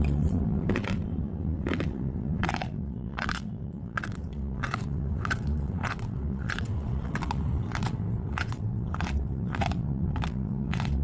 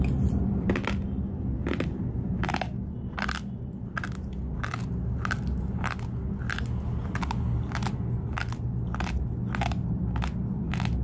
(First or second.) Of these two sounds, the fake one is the first